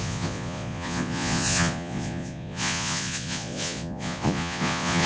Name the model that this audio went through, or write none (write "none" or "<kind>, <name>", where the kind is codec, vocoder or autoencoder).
vocoder, Vocos